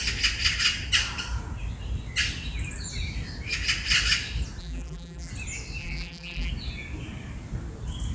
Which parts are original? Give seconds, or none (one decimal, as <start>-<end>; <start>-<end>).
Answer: 0.0-4.6; 5.3-5.8; 6.5-8.1